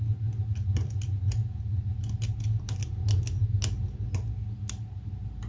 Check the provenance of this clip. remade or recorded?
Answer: recorded